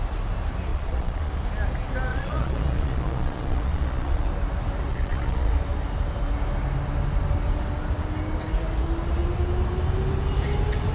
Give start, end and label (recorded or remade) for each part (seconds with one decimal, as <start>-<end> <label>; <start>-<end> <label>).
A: 0.0-0.7 recorded; 0.7-1.3 remade; 1.3-2.1 recorded; 2.1-4.3 remade; 4.3-4.9 recorded; 4.9-5.5 remade; 5.5-10.9 recorded